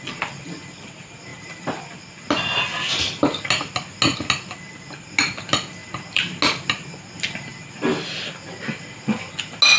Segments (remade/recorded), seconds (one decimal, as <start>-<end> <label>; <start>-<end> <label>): 0.0-1.3 recorded; 1.3-1.8 remade; 1.8-5.8 recorded; 5.8-6.4 remade; 6.4-9.8 recorded